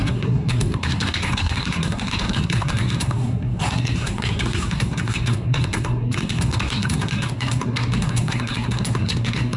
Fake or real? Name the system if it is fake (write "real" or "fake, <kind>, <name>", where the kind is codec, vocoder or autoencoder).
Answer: fake, codec, SNAC